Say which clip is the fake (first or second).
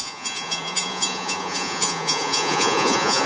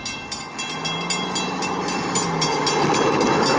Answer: first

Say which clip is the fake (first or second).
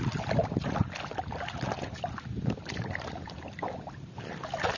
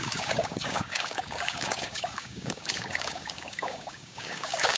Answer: second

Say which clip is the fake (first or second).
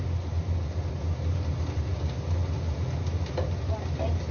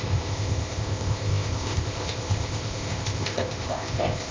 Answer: second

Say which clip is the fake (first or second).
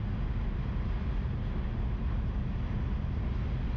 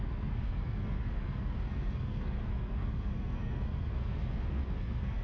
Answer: second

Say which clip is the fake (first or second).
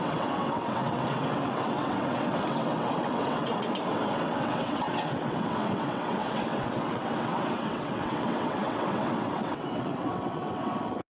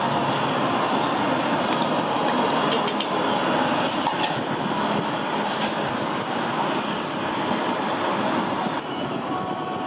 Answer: first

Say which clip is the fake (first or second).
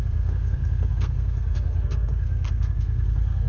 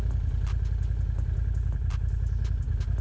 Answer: first